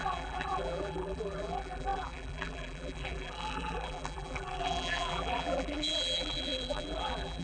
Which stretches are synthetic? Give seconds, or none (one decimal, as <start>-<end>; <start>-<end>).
0.0-7.4